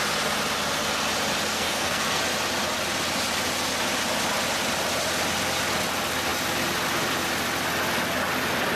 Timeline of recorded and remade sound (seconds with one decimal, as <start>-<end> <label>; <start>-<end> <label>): 0.0-1.5 recorded; 1.5-2.2 remade; 2.2-8.8 recorded